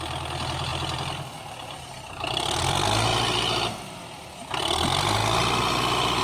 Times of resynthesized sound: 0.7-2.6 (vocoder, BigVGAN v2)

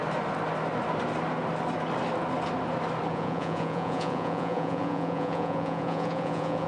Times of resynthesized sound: 3.1-6.7 (vocoder, Vocos)

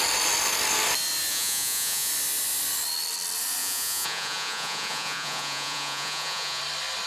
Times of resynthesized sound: 1.3-2.1 (vocoder, Vocos); 3.6-6.6

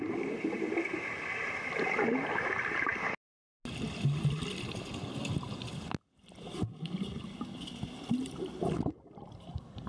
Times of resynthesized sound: none

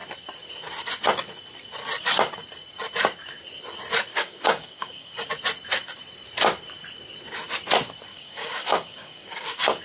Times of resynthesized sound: 4.1-5.3 (codec, DAC); 8.1-9.8

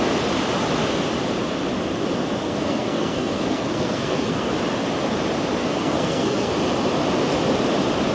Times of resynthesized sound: 2.4-4.5 (codec, SNAC); 5.6-6.5